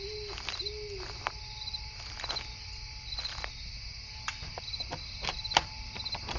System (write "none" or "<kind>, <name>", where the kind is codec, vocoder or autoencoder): none